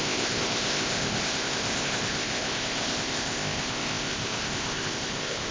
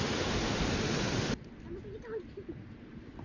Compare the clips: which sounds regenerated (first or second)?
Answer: first